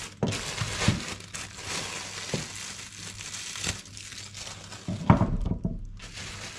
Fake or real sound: real